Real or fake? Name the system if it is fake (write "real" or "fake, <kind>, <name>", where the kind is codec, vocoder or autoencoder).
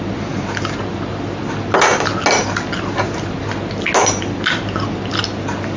real